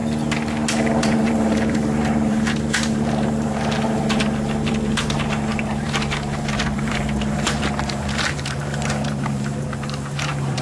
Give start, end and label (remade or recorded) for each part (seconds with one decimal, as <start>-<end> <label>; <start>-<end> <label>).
0.0-1.0 recorded; 1.0-10.6 remade